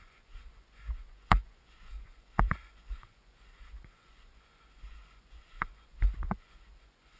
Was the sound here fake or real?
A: fake